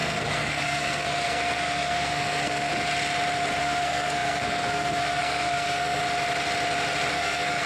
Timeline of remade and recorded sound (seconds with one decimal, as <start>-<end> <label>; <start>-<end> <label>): 0.0-2.7 remade; 2.7-3.6 recorded; 3.6-6.0 remade; 6.0-7.1 recorded; 7.1-7.7 remade